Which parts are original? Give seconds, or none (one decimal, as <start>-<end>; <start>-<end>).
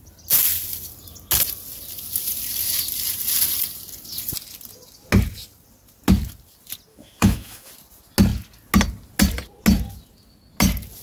0.0-6.9; 7.7-11.0